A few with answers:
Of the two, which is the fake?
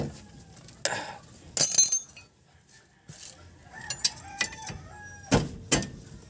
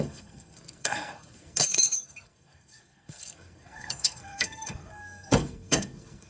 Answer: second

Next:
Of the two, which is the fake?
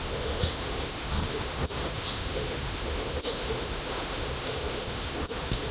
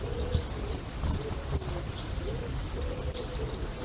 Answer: first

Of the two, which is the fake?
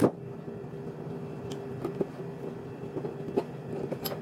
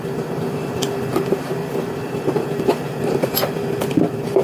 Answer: second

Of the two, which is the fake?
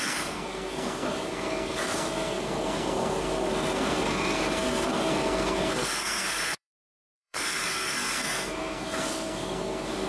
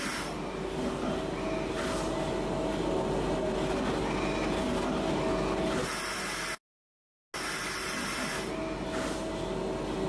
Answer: first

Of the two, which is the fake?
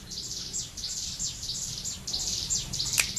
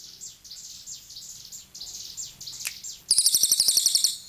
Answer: first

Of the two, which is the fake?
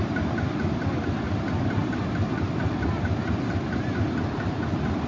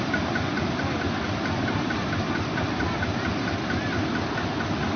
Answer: first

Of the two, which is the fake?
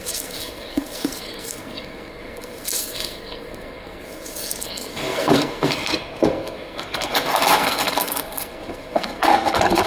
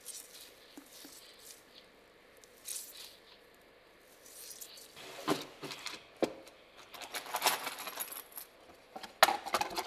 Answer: first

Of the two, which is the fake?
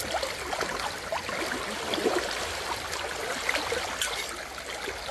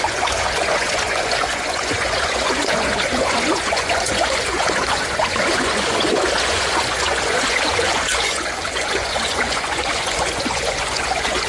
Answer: second